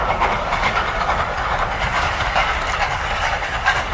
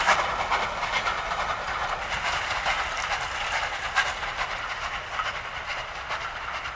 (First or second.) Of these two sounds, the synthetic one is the first